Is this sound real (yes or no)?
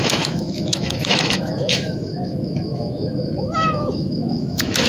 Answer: no